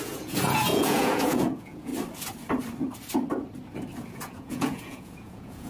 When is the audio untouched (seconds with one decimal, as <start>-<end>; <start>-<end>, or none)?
1.9-4.1